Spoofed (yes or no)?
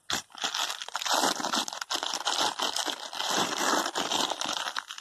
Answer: yes